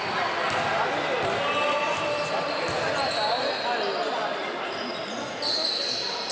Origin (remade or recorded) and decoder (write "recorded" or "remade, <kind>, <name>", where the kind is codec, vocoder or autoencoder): recorded